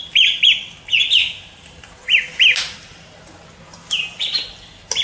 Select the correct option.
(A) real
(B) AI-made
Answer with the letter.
A